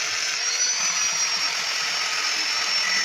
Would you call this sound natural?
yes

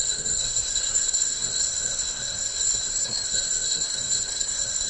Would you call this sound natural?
no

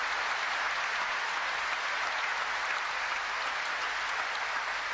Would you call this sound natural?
yes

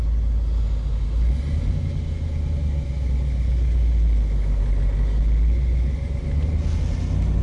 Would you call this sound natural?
yes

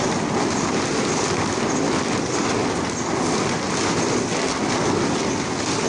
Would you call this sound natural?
yes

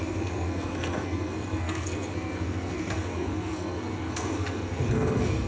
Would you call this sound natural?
no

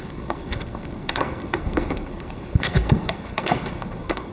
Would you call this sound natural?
no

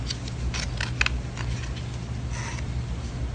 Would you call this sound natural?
yes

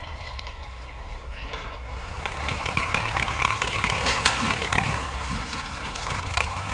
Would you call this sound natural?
no